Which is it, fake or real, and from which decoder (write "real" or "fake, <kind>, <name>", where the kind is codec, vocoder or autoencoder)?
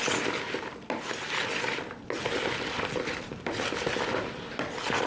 real